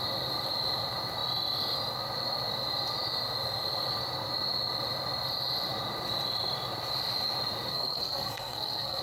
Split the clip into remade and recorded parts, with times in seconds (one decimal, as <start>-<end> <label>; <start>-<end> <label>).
0.0-7.7 recorded; 7.7-9.0 remade